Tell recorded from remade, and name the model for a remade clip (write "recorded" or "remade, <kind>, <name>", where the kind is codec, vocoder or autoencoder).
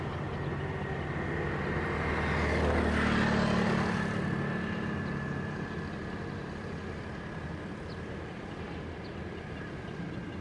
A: recorded